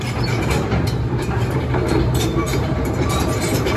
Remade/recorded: remade